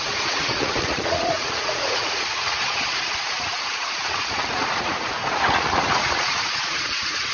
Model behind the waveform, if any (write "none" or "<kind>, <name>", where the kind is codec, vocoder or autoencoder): vocoder, Vocos